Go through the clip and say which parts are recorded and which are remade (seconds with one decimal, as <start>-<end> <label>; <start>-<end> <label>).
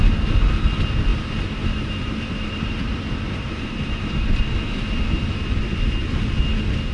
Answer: 0.0-1.1 recorded; 1.1-5.0 remade; 5.0-6.9 recorded